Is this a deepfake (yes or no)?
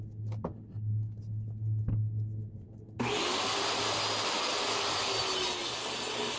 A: no